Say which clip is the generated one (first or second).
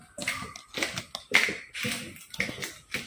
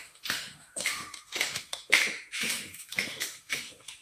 second